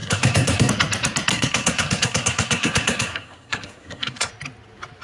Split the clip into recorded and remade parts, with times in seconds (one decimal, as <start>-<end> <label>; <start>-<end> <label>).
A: 0.0-0.7 remade; 0.7-1.3 recorded; 1.3-4.3 remade; 4.3-5.0 recorded